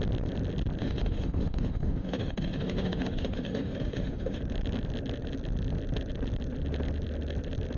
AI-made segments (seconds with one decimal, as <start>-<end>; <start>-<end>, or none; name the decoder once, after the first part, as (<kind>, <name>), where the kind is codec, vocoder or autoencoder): 0.8-4.4 (autoencoder, DAC-VAE)